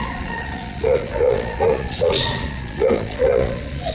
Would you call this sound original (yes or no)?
no